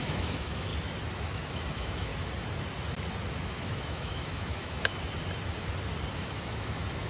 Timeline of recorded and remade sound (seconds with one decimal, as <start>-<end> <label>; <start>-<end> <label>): 0.0-0.7 remade; 0.7-1.2 recorded; 1.2-2.1 remade; 2.1-3.3 recorded; 3.3-4.9 remade; 4.9-6.2 recorded; 6.2-7.1 remade